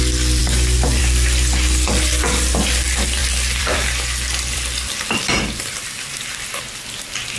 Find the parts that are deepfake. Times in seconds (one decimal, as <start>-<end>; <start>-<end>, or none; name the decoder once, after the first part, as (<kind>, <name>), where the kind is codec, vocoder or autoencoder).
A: 3.2-5.4 (vocoder, BigVGAN v2)